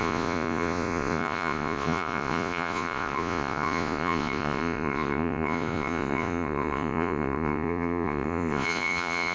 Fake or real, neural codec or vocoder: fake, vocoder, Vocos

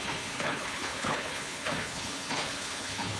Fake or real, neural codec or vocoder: fake, codec, HILCodec